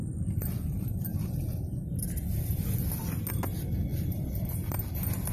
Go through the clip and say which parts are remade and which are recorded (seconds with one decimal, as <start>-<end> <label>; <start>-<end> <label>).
0.0-5.3 recorded